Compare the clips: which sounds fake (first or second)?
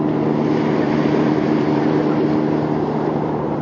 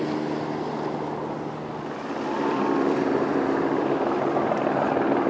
first